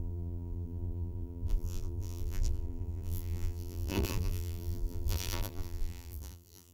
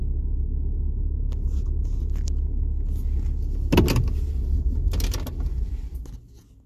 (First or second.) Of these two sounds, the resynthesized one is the first